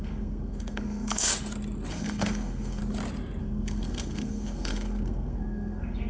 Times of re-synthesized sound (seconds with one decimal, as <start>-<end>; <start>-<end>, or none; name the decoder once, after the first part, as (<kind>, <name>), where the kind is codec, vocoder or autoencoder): 0.0-1.3 (codec, SNAC); 1.9-2.8; 3.4-6.1